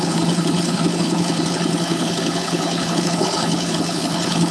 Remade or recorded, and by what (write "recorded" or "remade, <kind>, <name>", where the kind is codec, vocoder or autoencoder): remade, codec, HILCodec